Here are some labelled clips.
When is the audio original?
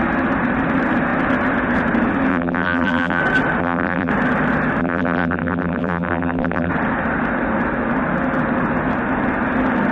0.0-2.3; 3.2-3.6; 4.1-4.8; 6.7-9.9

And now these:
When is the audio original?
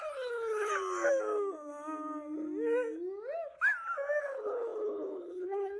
0.7-4.2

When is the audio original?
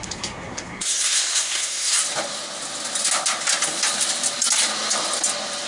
2.0-5.7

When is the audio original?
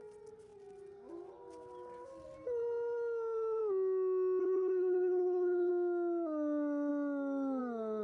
0.0-4.4; 5.7-8.0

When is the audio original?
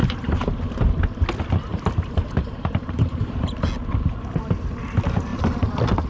0.8-1.7; 3.4-6.1